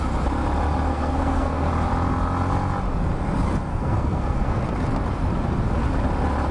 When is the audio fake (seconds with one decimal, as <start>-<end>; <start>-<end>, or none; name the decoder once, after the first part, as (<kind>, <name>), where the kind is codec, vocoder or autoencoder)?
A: 0.9-1.7 (codec, SNAC); 3.7-4.6